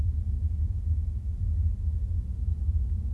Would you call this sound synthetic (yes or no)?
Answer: no